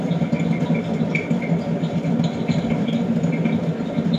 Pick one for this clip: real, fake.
real